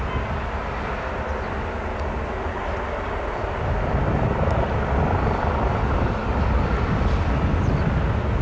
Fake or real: real